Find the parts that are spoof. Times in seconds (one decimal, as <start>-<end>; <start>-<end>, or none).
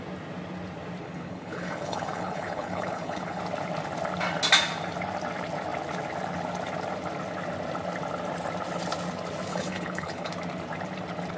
1.0-3.4; 9.5-10.3